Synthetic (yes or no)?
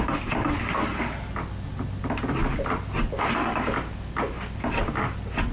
no